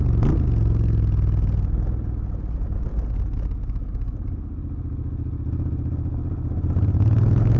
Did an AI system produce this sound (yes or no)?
no